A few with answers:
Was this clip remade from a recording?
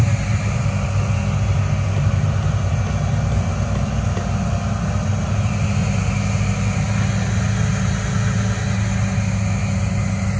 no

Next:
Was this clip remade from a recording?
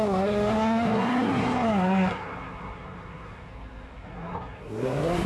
yes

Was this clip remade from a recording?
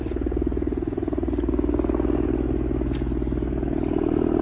no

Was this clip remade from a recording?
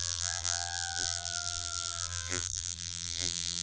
yes